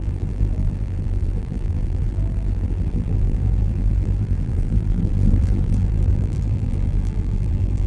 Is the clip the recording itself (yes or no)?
no